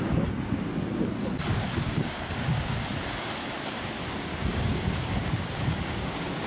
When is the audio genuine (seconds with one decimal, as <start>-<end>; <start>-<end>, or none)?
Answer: 0.0-1.5; 2.7-4.3